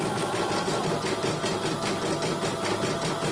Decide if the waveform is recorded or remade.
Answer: recorded